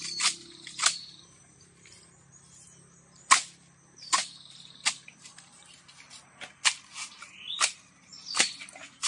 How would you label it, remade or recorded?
recorded